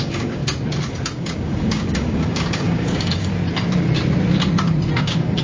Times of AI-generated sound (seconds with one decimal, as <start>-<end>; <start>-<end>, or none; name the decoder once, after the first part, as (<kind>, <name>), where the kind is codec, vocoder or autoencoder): 0.0-0.4 (codec, DAC); 1.2-3.3; 5.0-5.4